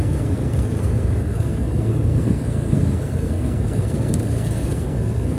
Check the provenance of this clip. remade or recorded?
remade